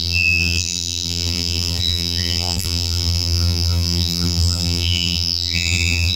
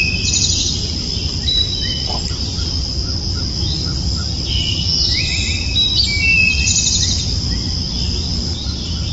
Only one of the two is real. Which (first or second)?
second